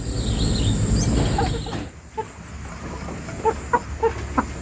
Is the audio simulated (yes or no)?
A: no